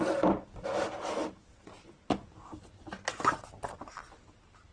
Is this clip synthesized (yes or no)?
yes